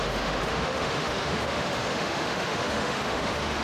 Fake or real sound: fake